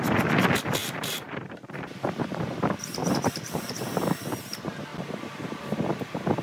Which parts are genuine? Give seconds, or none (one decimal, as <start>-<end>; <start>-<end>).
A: 0.0-0.8; 2.4-3.0; 3.7-4.9; 5.6-6.4